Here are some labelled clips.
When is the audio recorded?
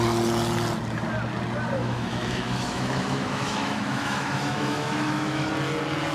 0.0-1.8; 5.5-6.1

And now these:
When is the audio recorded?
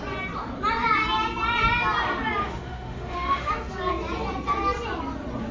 0.0-2.4; 3.5-5.5